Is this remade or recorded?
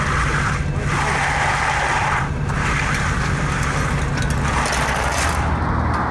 recorded